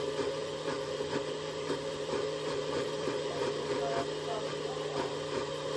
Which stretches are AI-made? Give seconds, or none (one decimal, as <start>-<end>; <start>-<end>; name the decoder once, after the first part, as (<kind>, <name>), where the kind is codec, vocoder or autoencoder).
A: 0.4-3.9 (vocoder, BigVGAN v2)